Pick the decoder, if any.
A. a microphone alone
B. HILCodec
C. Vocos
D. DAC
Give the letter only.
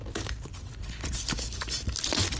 A